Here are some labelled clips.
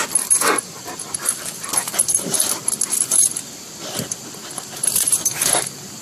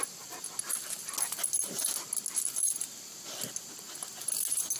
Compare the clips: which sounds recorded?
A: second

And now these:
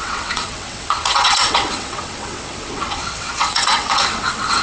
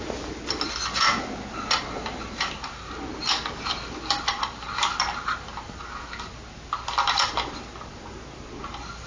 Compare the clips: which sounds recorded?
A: second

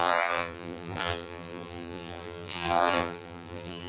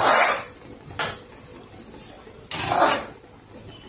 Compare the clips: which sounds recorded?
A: second